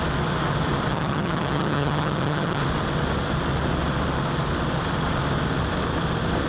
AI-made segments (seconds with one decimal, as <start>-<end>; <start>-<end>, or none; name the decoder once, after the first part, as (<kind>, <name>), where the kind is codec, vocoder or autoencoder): 0.9-2.6 (vocoder, HiFi-GAN)